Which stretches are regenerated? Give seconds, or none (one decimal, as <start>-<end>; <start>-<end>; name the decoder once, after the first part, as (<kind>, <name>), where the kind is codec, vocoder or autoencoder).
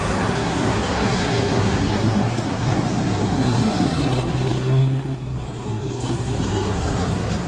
0.0-7.5 (codec, SNAC)